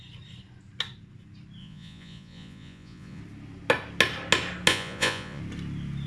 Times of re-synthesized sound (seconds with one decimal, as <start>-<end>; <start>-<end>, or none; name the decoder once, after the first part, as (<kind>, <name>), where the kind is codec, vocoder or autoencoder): 1.6-3.2 (vocoder, Vocos); 4.7-5.4